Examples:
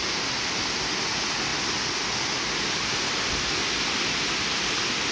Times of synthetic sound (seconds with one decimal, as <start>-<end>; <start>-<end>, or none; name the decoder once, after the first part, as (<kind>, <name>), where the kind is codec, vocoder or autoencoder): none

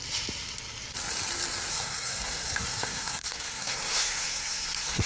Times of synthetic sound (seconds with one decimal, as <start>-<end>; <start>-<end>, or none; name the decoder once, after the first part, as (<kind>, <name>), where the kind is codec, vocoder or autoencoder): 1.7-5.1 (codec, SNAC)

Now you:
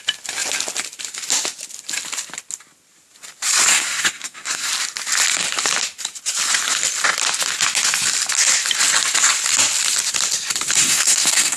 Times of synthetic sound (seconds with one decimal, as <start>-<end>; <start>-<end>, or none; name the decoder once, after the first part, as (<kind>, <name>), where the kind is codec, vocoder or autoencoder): 3.7-4.7 (codec, SNAC); 10.8-11.6

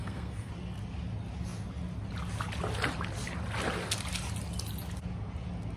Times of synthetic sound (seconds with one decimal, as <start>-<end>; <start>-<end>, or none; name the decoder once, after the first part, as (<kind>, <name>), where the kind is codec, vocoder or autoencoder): 0.0-0.5 (codec, SNAC)

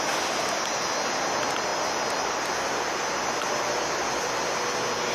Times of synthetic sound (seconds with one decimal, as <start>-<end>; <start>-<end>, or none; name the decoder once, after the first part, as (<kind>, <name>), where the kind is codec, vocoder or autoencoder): none

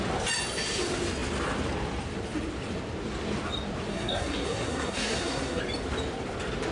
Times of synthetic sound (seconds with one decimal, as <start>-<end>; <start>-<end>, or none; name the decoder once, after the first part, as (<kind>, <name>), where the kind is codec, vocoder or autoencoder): 3.9-5.6 (codec, SNAC)